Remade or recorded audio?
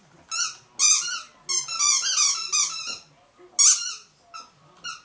recorded